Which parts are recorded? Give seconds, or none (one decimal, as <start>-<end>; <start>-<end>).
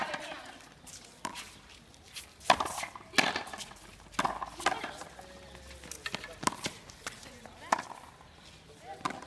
0.9-9.3